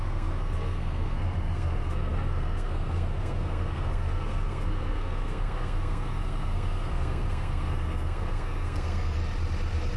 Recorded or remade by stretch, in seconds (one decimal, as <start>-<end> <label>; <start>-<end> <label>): 0.0-9.2 remade; 9.2-10.0 recorded

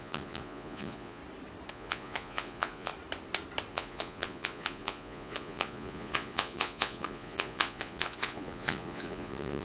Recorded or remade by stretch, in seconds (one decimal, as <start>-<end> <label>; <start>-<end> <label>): 0.0-1.2 remade; 1.2-1.7 recorded; 1.7-2.9 remade; 2.9-3.7 recorded; 3.7-9.6 remade

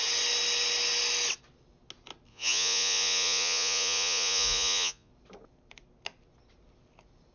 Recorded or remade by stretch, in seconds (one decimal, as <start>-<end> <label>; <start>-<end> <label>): 0.0-2.3 recorded; 2.3-5.1 remade; 5.1-7.3 recorded

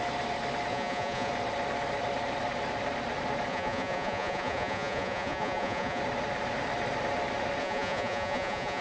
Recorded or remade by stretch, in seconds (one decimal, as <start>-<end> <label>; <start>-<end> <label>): 0.0-0.7 recorded; 0.7-1.3 remade; 1.3-3.5 recorded; 3.5-6.0 remade; 6.0-7.6 recorded; 7.6-8.8 remade

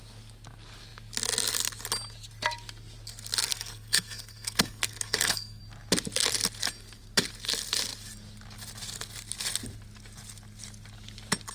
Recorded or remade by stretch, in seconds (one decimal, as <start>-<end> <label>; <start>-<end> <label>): 0.0-3.5 recorded; 3.5-5.6 remade; 5.6-11.5 recorded